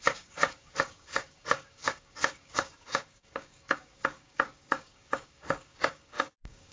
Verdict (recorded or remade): remade